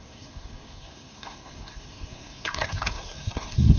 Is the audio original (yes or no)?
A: no